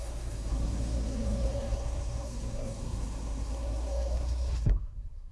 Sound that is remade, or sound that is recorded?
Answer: remade